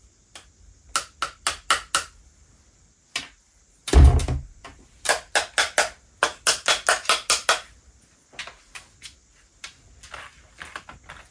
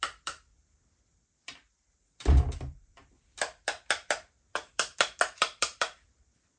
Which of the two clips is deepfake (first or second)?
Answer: second